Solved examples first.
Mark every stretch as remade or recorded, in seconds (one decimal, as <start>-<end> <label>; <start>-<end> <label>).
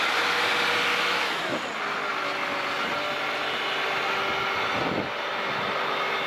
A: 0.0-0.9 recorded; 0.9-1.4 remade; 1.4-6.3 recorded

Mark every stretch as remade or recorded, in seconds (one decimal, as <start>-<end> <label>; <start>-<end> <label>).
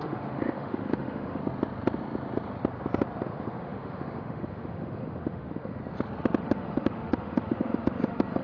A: 0.0-1.4 remade; 1.4-3.2 recorded; 3.2-5.8 remade; 5.8-6.4 recorded; 6.4-8.4 remade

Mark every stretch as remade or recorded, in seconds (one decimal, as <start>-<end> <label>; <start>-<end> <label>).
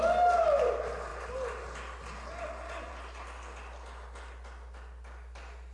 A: 0.0-5.7 recorded